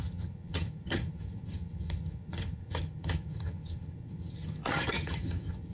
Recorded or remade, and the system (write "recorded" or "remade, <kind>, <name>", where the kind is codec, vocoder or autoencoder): remade, vocoder, HiFi-GAN